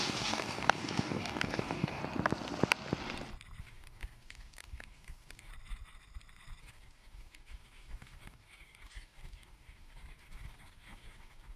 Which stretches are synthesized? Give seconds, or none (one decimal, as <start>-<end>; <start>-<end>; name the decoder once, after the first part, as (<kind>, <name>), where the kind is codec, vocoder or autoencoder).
0.0-2.0 (codec, DAC); 3.6-5.5; 6.6-11.6